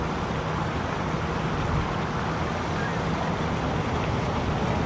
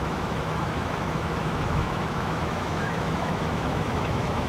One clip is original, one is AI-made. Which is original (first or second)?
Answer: first